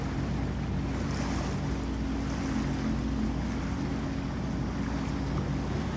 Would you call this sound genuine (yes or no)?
yes